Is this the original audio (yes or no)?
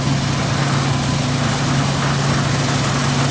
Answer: yes